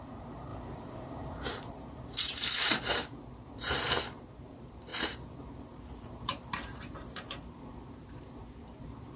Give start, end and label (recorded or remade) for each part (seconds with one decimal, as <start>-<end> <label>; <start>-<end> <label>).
0.0-9.2 remade